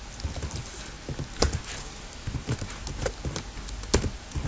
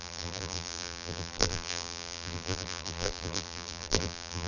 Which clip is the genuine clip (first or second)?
first